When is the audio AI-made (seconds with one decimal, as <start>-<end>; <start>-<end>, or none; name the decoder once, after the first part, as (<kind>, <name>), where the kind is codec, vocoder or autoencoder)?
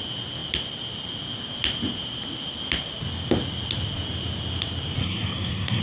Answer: 5.0-5.8 (codec, SNAC)